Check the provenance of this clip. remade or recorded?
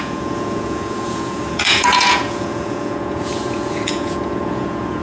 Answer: remade